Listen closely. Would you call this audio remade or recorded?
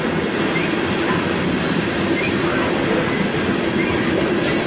recorded